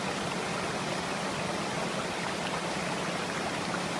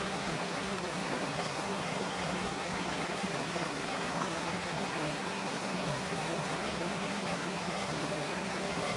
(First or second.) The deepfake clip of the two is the second